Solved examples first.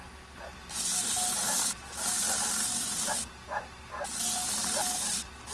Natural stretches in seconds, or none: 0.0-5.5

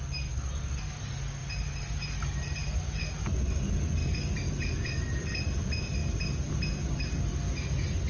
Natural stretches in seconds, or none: 0.0-1.4; 3.1-4.0; 4.7-6.0; 7.0-8.1